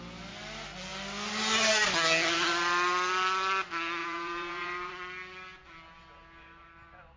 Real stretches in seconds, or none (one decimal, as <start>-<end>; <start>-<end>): 0.0-4.0; 4.9-7.2